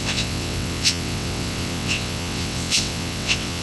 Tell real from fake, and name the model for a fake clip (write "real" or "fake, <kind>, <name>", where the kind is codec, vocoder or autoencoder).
fake, vocoder, WaveNeXt